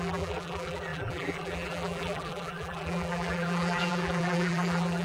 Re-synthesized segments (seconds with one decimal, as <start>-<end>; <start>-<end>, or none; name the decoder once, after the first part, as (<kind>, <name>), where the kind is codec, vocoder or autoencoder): 0.0-5.0 (vocoder, BigVGAN v2)